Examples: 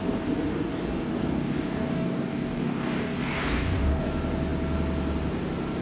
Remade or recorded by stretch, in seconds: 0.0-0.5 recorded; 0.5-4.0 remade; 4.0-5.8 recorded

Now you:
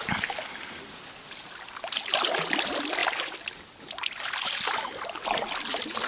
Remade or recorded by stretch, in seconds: 0.0-6.1 recorded

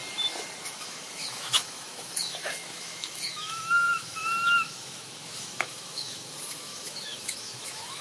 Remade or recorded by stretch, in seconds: 0.0-0.6 recorded; 0.6-8.0 remade

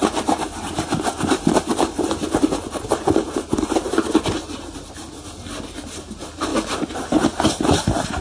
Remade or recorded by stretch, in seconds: 0.0-8.2 recorded

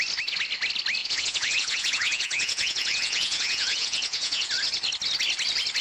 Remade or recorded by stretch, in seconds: 0.0-1.0 recorded; 1.0-4.5 remade; 4.5-5.8 recorded

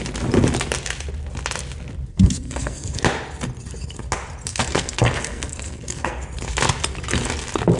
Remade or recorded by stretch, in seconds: 0.0-2.1 recorded; 2.1-3.0 remade; 3.0-4.5 recorded; 4.5-6.2 remade; 6.2-7.8 recorded